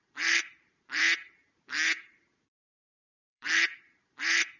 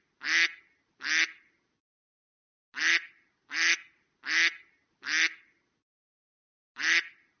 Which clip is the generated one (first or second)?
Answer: first